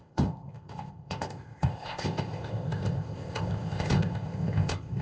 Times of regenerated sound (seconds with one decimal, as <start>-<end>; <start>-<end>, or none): 0.0-5.0